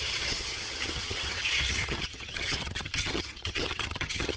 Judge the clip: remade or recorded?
remade